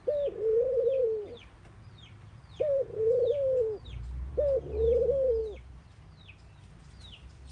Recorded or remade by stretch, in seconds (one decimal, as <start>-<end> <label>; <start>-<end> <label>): 0.0-0.5 recorded; 0.5-4.3 remade; 4.3-7.5 recorded